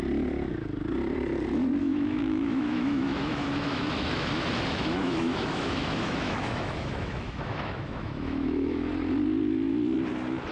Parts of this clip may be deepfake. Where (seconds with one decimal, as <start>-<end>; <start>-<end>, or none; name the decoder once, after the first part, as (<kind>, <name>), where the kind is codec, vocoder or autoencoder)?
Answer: 1.8-4.3 (autoencoder, DAC-VAE); 4.7-8.9